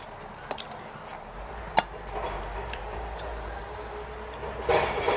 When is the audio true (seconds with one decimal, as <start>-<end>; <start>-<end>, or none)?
0.0-1.1; 3.6-5.2